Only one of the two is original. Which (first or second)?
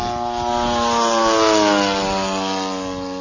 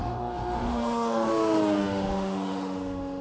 first